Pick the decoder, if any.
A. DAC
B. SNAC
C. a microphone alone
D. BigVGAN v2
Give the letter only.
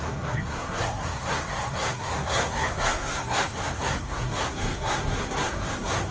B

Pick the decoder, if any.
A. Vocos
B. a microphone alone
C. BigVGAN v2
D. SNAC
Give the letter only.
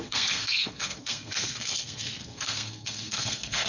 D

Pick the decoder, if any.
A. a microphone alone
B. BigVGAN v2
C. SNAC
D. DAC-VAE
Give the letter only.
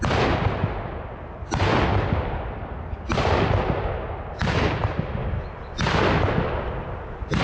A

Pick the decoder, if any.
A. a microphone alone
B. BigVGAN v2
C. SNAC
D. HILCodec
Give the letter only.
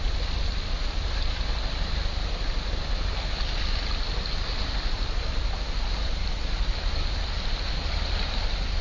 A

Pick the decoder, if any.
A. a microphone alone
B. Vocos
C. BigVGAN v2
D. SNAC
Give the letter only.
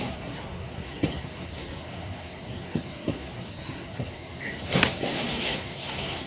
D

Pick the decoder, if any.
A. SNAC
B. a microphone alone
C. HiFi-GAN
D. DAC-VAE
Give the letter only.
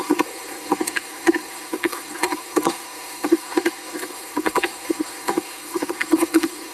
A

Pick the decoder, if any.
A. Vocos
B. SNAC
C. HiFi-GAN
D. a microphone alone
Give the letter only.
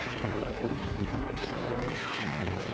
B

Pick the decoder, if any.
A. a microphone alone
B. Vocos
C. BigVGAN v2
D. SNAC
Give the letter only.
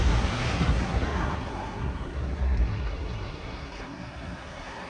D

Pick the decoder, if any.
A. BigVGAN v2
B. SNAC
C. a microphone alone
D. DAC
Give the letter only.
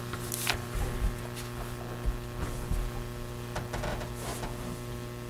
C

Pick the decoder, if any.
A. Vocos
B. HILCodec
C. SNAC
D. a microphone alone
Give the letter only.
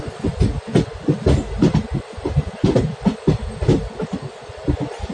D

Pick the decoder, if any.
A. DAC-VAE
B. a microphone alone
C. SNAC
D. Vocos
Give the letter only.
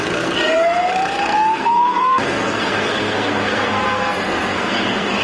C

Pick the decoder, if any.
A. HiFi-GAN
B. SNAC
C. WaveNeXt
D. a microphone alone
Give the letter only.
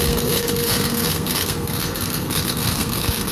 B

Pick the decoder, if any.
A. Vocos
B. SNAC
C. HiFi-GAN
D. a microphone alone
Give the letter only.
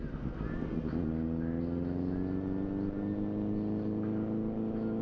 D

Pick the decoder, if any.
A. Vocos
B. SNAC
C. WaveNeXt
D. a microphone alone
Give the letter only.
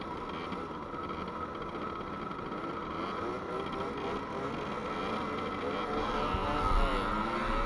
D